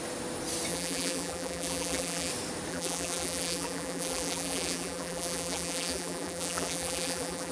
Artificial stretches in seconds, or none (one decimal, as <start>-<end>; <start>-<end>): 0.7-2.3; 2.7-7.5